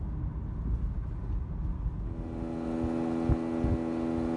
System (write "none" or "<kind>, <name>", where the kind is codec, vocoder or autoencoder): none